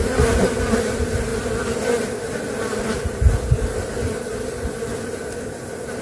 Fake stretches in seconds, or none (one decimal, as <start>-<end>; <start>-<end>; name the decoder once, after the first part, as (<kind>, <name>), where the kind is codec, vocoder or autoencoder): none